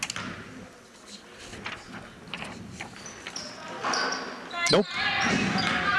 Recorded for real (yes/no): yes